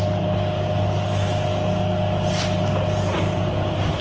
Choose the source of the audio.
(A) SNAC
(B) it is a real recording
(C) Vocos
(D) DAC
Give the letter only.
B